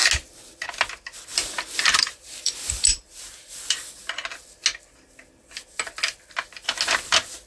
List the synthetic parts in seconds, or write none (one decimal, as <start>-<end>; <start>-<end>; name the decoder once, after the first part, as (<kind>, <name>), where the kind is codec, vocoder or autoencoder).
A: 1.3-4.0 (vocoder, BigVGAN v2)